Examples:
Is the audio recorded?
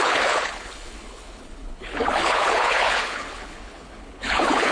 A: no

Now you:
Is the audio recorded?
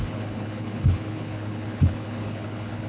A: no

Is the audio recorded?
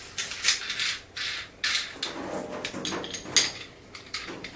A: yes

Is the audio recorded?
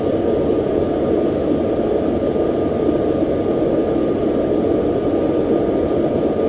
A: yes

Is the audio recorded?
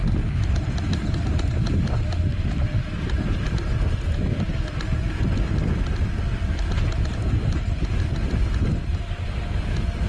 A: yes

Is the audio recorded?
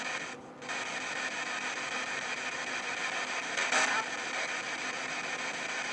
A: yes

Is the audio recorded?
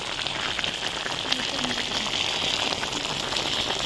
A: yes